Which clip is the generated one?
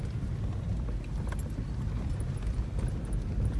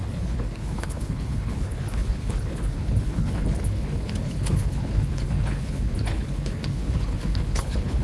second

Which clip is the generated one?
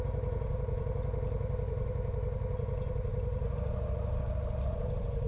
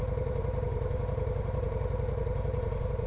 second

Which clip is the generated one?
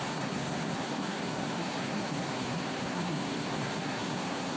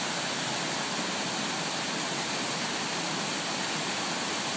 first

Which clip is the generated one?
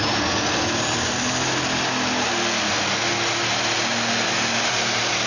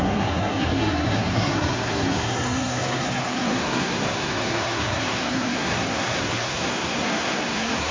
second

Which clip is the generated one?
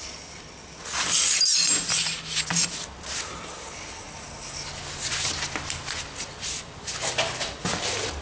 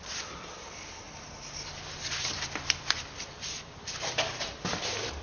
second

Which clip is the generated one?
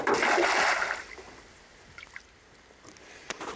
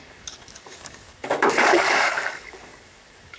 second